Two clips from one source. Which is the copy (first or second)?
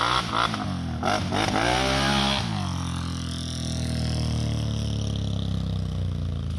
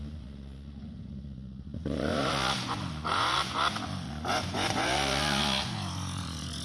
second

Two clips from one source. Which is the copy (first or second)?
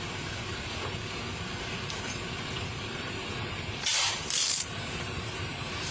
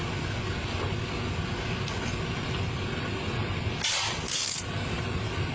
first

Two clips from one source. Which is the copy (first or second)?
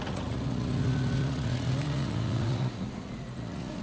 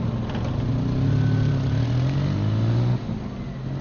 first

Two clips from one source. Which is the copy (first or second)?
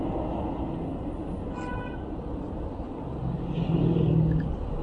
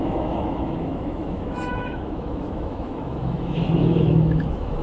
second